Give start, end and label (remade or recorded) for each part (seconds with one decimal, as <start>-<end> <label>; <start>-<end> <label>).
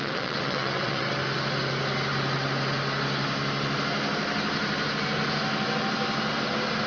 0.0-1.1 remade; 1.1-6.9 recorded